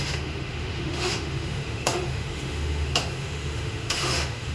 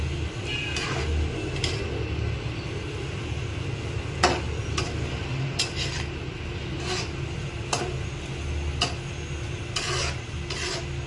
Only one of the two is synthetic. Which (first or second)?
first